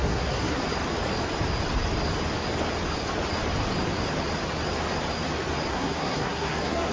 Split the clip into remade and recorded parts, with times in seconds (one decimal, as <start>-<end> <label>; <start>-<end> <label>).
0.0-0.6 remade; 0.6-5.7 recorded; 5.7-6.9 remade